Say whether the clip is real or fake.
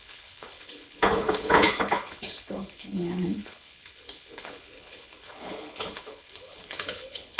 fake